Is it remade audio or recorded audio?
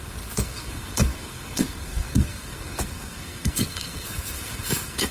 remade